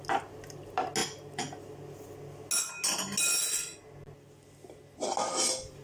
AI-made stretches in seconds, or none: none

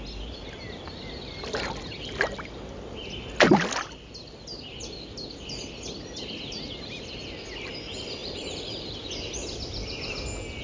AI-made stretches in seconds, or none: 8.2-9.1

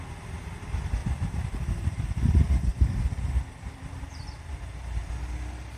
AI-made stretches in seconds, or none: 1.0-1.6; 2.7-5.1

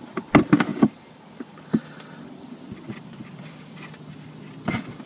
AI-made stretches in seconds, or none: 0.7-3.8

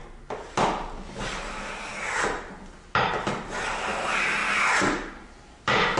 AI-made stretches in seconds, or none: 4.4-5.6

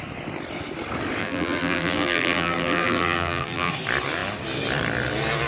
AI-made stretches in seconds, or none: 1.2-3.7